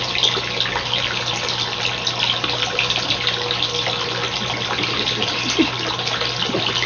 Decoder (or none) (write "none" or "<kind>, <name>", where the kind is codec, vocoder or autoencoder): none